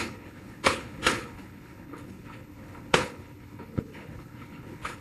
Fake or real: fake